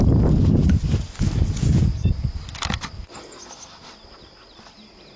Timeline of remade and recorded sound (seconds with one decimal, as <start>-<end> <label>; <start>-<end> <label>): 0.0-5.2 recorded